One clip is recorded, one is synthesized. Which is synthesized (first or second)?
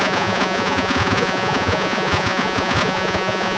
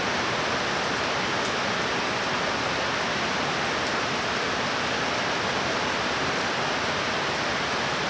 first